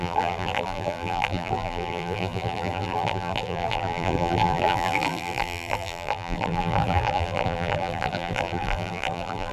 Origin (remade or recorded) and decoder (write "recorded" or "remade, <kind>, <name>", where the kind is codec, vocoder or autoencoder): remade, vocoder, BigVGAN v2